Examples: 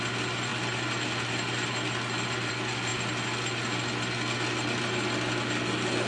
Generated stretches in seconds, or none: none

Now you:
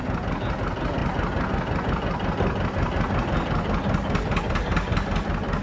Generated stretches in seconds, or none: none

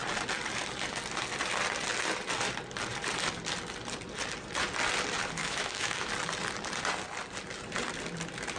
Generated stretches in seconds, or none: 5.4-6.1 (autoencoder, DAC-VAE)

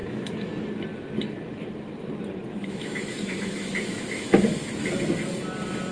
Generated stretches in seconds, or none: 0.0-0.5 (autoencoder, DAC-VAE); 2.6-4.3

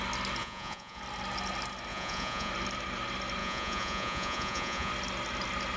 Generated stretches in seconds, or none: 0.4-1.0 (vocoder, Vocos); 1.9-2.5; 3.4-4.9

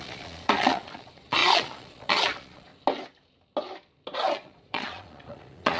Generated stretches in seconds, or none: 0.0-2.7 (vocoder, Vocos); 4.3-5.8

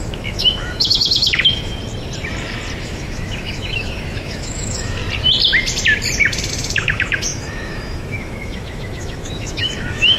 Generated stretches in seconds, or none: 0.0-1.8 (autoencoder, DAC-VAE); 2.8-5.0; 6.5-10.2

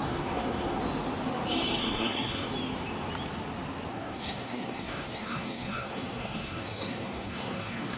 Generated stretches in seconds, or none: 0.0-0.8 (codec, SNAC); 1.8-2.5; 3.9-8.0